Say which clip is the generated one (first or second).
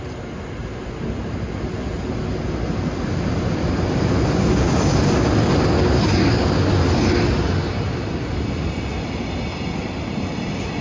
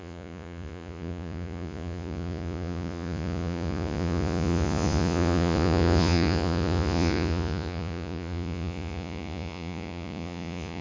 second